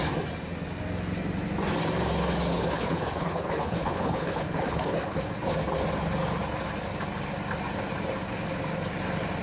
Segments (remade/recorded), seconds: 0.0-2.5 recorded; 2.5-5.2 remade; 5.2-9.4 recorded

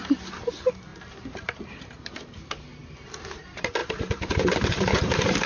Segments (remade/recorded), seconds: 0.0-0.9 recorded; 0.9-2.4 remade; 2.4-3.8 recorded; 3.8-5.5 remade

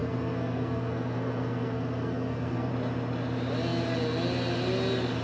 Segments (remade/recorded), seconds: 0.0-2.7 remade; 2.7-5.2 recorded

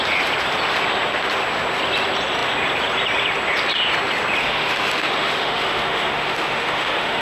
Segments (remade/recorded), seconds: 0.0-4.4 recorded; 4.4-7.2 remade

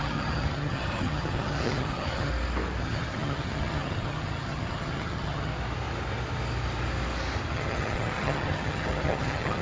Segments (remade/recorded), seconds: 0.0-2.3 remade; 2.3-2.8 recorded; 2.8-5.5 remade; 5.5-7.5 recorded; 7.5-9.6 remade

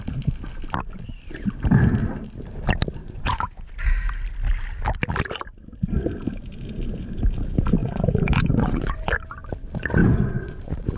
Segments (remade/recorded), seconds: 0.0-3.0 recorded; 3.0-3.7 remade; 3.7-7.8 recorded; 7.8-9.2 remade; 9.2-10.0 recorded; 10.0-11.0 remade

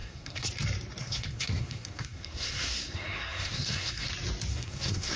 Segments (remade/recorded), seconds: 0.0-0.5 remade; 0.5-1.0 recorded; 1.0-4.1 remade; 4.1-4.5 recorded; 4.5-5.2 remade